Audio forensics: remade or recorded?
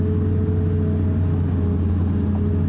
recorded